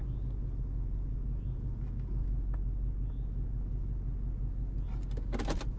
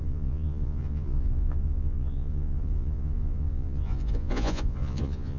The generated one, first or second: second